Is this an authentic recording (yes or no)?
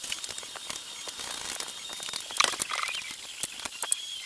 yes